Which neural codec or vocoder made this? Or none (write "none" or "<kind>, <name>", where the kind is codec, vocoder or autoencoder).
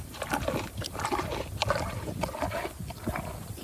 none